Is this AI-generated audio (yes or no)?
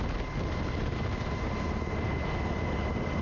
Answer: no